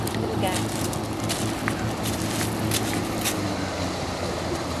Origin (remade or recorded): recorded